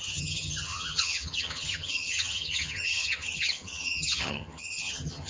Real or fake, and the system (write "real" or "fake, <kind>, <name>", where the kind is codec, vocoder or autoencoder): fake, vocoder, HiFi-GAN